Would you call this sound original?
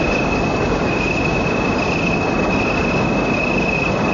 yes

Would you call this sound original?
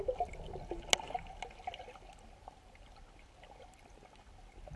yes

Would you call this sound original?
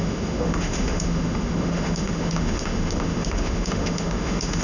no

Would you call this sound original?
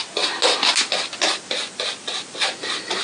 yes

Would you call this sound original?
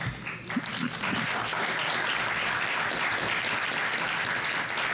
yes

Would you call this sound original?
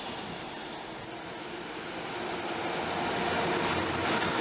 yes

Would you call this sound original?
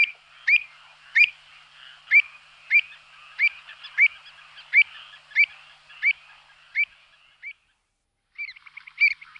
yes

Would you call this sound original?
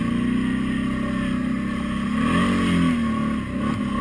yes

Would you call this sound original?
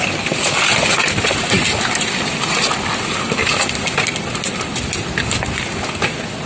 yes